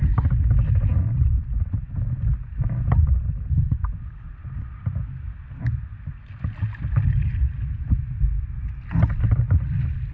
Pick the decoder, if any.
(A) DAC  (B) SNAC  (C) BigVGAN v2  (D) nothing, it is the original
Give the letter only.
D